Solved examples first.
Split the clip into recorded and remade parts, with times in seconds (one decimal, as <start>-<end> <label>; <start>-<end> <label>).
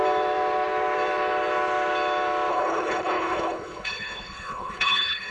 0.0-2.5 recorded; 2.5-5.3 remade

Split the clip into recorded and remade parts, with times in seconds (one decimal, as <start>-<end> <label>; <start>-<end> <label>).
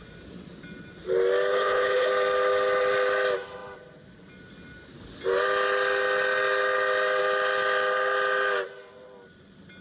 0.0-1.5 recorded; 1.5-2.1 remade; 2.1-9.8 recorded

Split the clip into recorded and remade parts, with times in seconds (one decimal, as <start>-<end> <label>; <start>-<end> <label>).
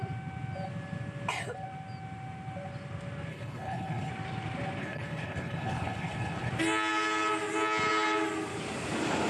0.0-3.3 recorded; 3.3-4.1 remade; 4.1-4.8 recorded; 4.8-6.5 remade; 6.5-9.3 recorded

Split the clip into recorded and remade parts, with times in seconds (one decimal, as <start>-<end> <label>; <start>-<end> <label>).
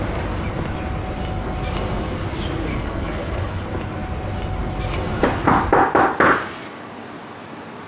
0.0-2.7 recorded; 2.7-3.6 remade; 3.6-7.9 recorded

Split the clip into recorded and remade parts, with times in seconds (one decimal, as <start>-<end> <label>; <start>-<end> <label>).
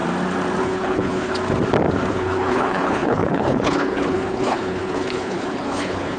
0.0-0.6 recorded; 0.6-1.3 remade; 1.3-2.1 recorded; 2.1-6.2 remade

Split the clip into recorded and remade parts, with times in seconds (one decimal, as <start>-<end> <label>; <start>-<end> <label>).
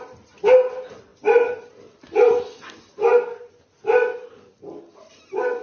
0.0-5.6 recorded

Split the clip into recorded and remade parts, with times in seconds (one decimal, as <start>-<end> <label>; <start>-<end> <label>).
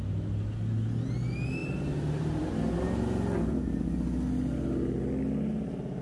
0.0-6.0 recorded